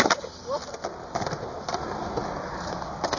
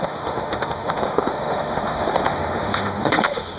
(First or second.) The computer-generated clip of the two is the second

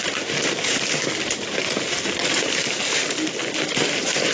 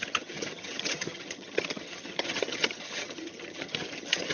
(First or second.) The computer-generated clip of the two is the second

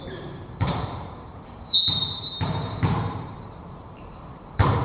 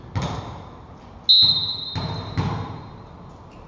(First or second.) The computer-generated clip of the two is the first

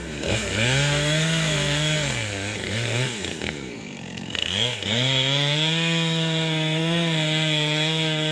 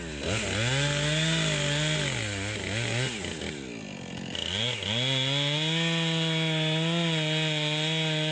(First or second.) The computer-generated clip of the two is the first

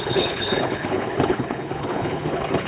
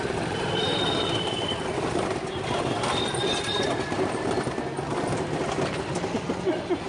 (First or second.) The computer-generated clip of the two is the first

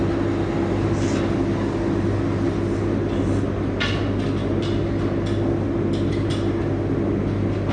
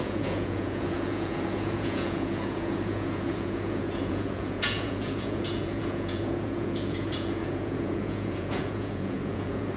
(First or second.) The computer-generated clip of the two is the second